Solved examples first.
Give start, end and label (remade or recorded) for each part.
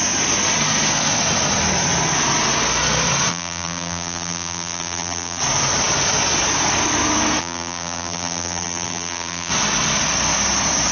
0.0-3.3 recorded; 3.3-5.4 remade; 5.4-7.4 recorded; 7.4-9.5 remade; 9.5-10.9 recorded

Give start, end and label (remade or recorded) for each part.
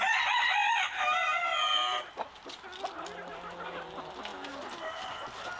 0.0-5.6 recorded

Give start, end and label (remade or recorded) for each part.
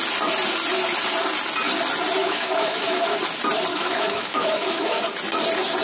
0.0-2.2 recorded; 2.2-3.1 remade; 3.1-3.7 recorded; 3.7-5.0 remade; 5.0-5.8 recorded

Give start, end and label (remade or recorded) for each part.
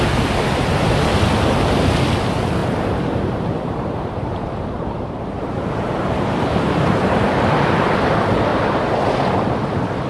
0.0-2.6 recorded; 2.6-7.6 remade; 7.6-8.5 recorded; 8.5-9.0 remade; 9.0-10.1 recorded